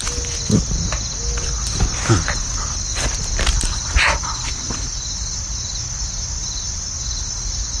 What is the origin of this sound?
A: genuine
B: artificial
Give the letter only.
A